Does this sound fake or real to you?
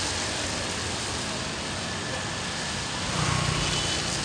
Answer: real